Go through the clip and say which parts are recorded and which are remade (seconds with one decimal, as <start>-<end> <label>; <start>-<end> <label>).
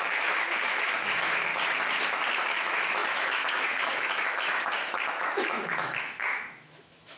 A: 0.0-1.5 remade; 1.5-2.3 recorded; 2.3-7.2 remade